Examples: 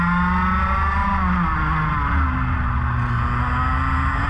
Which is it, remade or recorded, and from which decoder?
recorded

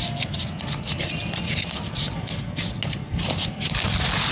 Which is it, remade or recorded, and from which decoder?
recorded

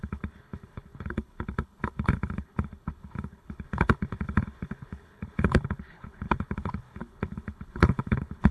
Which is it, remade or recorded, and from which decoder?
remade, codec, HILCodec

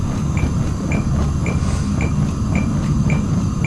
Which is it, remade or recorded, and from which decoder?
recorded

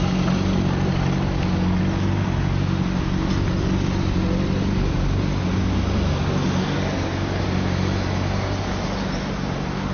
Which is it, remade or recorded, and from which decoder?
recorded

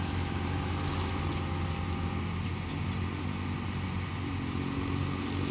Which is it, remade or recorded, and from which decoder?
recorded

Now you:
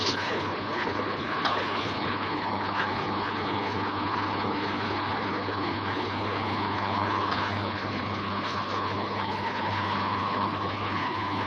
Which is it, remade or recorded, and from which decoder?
remade, codec, HILCodec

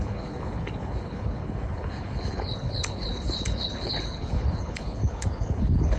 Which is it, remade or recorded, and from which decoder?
remade, codec, HILCodec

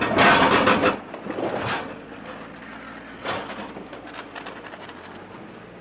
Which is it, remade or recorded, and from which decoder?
recorded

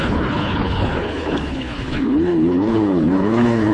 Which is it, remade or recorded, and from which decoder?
remade, codec, HILCodec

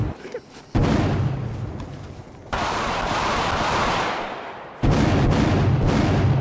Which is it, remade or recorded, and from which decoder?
recorded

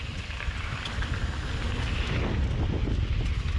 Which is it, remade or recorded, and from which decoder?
recorded